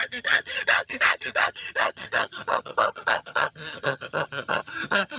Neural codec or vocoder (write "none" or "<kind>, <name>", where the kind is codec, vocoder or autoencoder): vocoder, HiFi-GAN